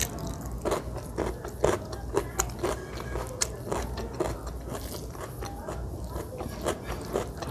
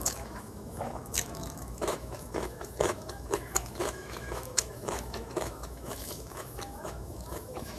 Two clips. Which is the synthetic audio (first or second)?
second